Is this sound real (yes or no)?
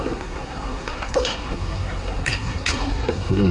no